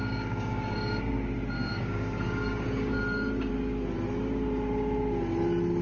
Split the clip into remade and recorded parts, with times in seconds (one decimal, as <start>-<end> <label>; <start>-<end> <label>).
0.0-1.0 remade; 1.0-1.7 recorded; 1.7-3.5 remade; 3.5-5.8 recorded